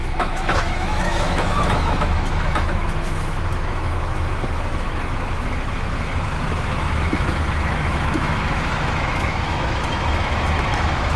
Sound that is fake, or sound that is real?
fake